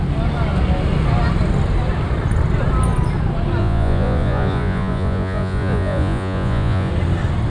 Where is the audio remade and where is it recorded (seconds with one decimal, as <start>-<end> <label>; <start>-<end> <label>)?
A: 0.0-3.6 recorded; 3.6-6.9 remade; 6.9-7.5 recorded